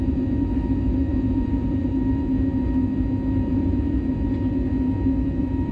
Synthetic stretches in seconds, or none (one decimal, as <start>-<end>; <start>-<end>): 1.1-1.9; 3.5-4.1